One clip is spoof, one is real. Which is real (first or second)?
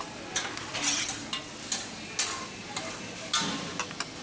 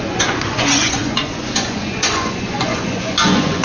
first